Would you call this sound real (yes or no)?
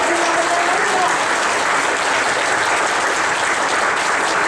yes